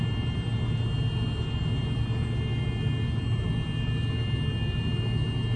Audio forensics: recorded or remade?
recorded